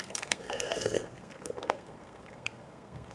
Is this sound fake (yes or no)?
yes